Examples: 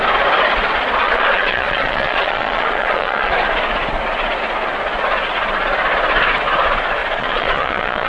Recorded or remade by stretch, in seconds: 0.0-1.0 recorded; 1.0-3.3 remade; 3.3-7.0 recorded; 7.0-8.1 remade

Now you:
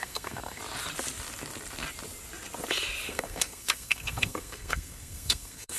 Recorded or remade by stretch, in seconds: 0.0-0.6 remade; 0.6-3.1 recorded; 3.1-5.8 remade